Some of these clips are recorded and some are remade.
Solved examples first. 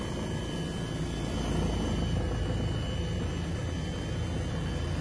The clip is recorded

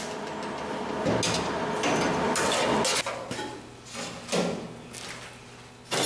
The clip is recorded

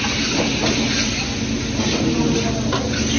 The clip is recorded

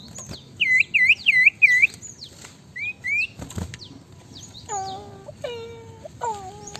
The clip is recorded